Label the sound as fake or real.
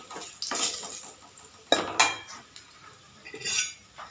real